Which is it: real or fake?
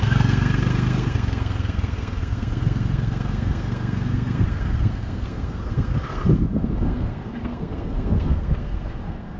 fake